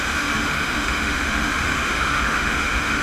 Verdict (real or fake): fake